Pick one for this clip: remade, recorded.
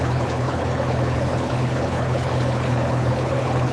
remade